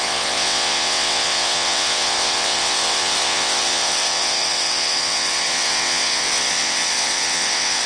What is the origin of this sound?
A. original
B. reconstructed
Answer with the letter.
B